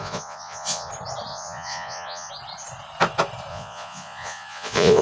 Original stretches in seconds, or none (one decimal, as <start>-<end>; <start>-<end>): 0.9-1.3; 2.3-3.5